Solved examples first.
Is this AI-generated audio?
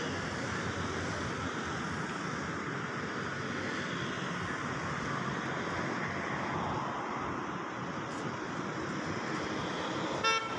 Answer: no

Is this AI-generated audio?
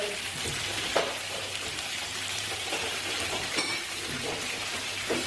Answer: yes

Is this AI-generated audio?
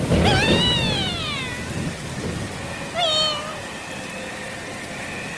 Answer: no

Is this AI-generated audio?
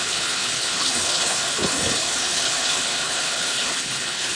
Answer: yes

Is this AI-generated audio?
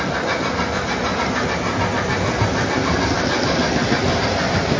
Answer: no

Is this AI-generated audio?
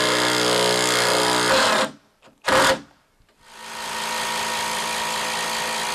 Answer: no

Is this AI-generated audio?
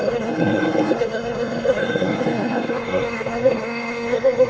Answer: yes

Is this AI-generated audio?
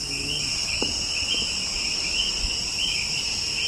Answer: no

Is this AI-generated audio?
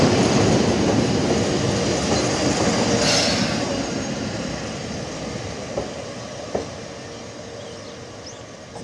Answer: no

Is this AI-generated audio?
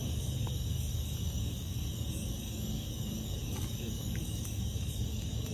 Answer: yes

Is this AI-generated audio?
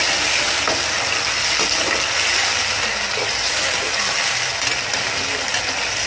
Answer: no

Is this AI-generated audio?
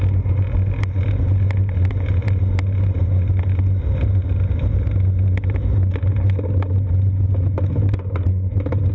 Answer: no